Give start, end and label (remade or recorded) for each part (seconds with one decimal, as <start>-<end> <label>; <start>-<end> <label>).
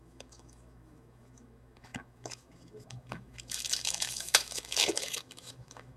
0.0-6.0 remade